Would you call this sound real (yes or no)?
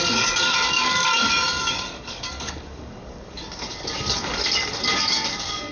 no